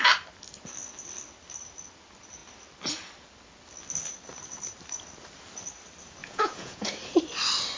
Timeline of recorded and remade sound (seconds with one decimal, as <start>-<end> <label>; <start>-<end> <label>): 0.0-6.2 recorded; 6.2-6.9 remade; 6.9-7.8 recorded